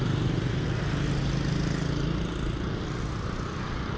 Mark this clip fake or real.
real